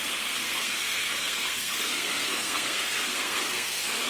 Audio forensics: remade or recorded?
remade